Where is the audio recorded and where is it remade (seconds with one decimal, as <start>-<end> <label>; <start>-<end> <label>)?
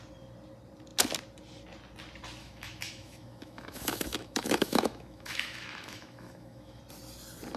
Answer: 0.0-2.4 recorded; 2.4-6.8 remade; 6.8-7.6 recorded